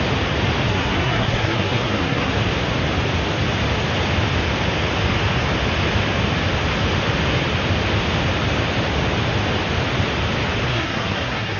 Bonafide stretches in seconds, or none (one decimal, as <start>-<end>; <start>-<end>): 0.0-0.7; 2.3-10.7